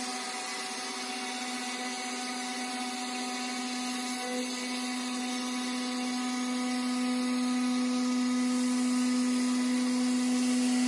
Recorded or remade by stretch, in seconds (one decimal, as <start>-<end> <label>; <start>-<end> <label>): 0.0-10.9 recorded